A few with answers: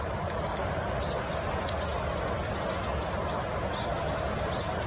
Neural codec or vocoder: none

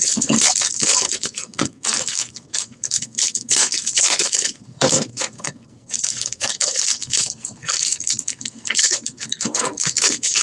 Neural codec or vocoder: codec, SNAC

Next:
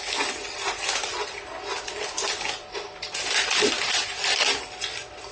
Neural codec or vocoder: none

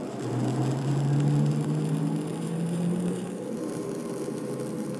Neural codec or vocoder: none